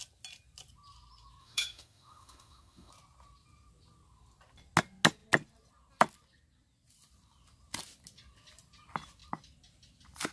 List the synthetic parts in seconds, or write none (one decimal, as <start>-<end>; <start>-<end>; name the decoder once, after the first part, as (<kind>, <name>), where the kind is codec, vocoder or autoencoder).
1.4-2.9 (autoencoder, DAC-VAE)